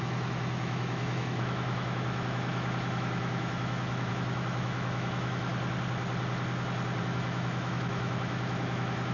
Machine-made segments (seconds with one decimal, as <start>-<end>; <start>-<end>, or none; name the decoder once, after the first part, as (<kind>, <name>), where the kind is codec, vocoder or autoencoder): 0.0-5.5 (autoencoder, DAC-VAE); 7.0-9.1